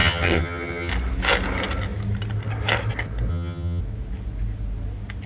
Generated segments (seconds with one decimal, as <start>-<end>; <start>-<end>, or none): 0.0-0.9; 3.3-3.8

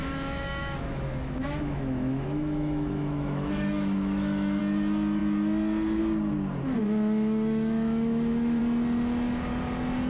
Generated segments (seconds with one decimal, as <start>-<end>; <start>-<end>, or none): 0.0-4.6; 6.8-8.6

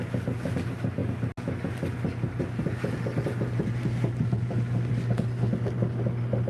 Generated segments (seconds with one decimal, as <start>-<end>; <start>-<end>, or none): none

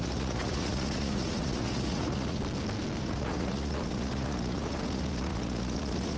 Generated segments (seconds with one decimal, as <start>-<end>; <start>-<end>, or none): 0.0-2.4; 3.0-6.2

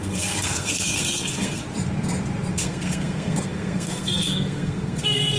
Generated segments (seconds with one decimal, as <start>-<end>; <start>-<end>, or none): 0.0-1.6; 2.5-5.4

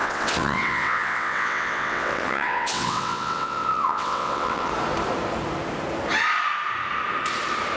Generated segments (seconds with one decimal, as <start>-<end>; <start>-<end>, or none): 0.0-4.7

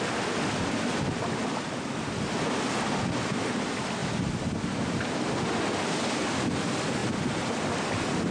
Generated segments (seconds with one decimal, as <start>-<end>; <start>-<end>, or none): none

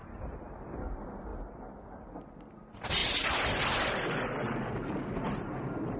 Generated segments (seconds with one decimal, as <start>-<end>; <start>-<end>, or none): none